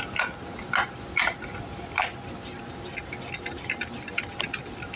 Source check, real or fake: real